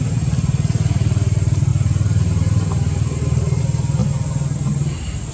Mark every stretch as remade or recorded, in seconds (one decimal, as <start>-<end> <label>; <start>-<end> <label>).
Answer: 0.0-5.3 recorded